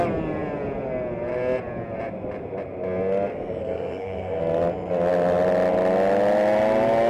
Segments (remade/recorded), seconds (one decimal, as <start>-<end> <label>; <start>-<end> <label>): 0.0-3.6 recorded; 3.6-4.4 remade; 4.4-7.1 recorded